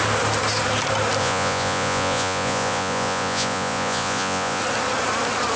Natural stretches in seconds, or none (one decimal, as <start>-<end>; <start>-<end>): 0.0-1.2; 4.6-5.6